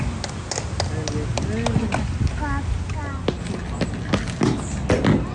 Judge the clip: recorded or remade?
recorded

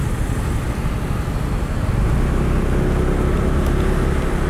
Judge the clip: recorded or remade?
recorded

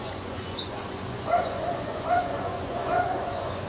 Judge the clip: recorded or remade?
remade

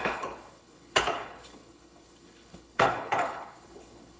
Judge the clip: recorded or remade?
remade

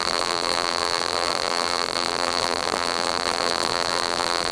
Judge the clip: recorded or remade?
remade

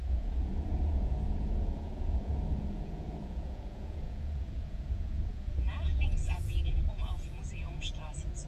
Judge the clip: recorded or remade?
remade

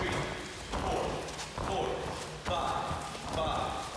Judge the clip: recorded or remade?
recorded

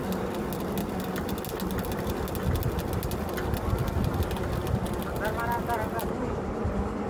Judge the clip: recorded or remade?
recorded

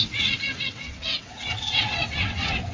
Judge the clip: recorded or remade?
remade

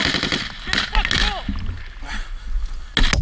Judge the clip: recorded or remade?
recorded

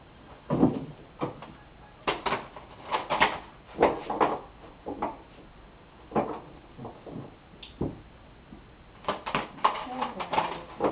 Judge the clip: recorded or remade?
recorded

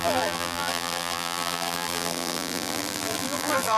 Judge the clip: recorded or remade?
remade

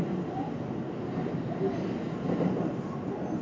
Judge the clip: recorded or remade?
recorded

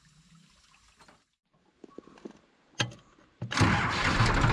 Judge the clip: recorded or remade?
recorded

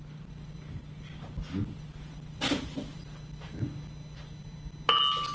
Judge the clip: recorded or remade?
recorded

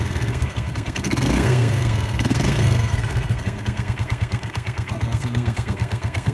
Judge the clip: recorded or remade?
remade